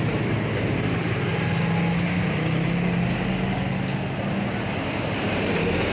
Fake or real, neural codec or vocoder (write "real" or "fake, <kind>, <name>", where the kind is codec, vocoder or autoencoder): real